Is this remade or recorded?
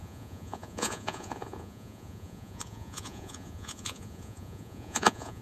remade